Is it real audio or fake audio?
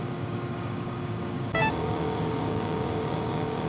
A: fake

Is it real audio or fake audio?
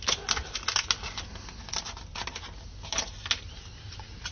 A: real